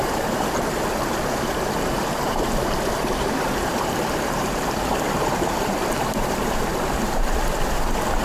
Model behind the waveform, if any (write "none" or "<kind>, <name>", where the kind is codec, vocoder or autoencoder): vocoder, BigVGAN v2